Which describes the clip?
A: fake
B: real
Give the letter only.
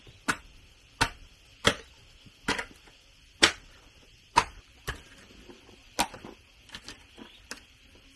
B